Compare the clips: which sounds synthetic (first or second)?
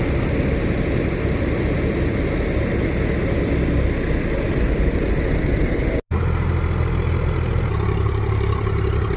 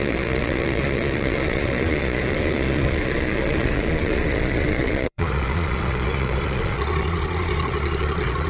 second